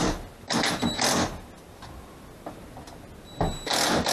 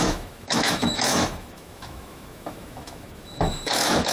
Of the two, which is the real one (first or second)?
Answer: first